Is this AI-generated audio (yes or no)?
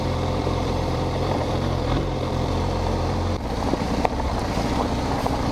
yes